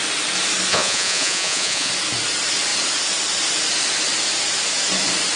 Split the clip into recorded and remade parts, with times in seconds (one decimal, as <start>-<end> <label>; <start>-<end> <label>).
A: 0.0-0.7 recorded; 0.7-1.9 remade; 1.9-5.4 recorded

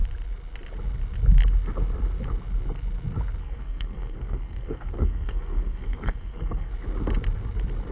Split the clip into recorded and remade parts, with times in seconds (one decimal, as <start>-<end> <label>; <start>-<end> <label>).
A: 0.0-3.4 recorded; 3.4-6.7 remade; 6.7-7.9 recorded

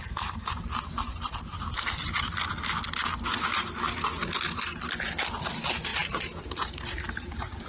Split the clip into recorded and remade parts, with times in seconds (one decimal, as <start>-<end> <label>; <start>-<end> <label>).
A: 0.0-0.7 remade; 0.7-5.3 recorded; 5.3-5.9 remade; 5.9-6.4 recorded; 6.4-7.7 remade

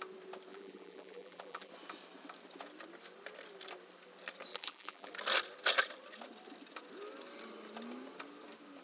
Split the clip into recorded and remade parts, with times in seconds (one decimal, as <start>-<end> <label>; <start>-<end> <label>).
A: 0.0-0.5 recorded; 0.5-1.7 remade; 1.7-4.5 recorded; 4.5-5.1 remade; 5.1-8.8 recorded